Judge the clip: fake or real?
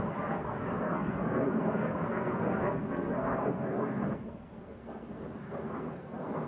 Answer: fake